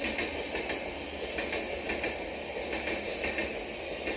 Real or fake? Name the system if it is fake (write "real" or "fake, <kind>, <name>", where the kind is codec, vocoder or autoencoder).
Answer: real